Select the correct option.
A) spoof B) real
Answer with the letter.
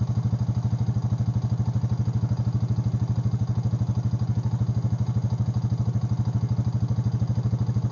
B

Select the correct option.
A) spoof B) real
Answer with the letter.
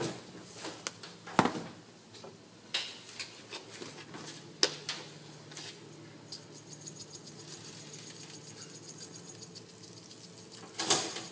B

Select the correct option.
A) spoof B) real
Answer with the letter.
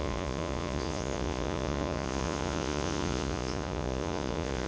A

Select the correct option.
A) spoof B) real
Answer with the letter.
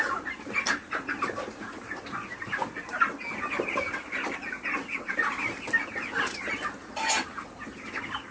B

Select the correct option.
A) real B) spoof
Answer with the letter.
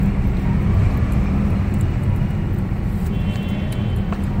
A